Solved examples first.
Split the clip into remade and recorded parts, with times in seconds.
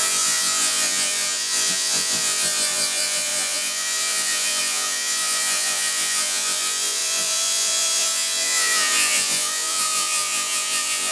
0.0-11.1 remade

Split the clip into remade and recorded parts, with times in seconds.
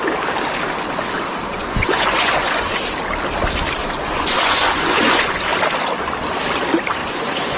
0.0-1.5 recorded; 1.5-2.8 remade; 2.8-3.8 recorded; 3.8-5.4 remade; 5.4-7.0 recorded; 7.0-7.6 remade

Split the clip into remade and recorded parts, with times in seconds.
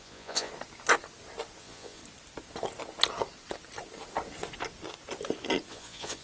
0.0-0.5 remade; 0.5-1.6 recorded; 1.6-2.0 remade; 2.0-5.7 recorded; 5.7-6.2 remade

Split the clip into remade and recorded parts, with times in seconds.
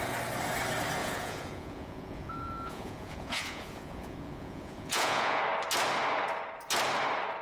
0.0-1.0 recorded; 1.0-5.4 remade; 5.4-7.4 recorded